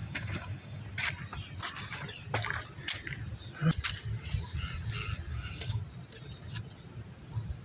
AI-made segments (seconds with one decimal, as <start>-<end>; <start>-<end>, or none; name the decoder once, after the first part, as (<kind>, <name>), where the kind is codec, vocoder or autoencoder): 0.0-0.8 (codec, DAC); 5.3-5.8